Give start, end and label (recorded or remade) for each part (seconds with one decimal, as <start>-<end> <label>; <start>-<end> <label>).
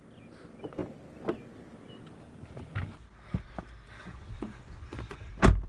0.0-4.0 recorded; 4.0-5.3 remade; 5.3-5.7 recorded